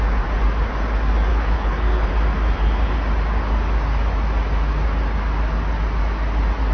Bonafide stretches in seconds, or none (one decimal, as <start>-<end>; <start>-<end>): 0.0-1.3; 2.1-6.7